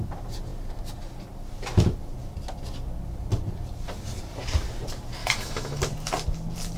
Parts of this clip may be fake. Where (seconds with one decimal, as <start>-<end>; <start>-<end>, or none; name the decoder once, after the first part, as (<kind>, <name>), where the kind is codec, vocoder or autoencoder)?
5.2-5.8 (autoencoder, DAC-VAE)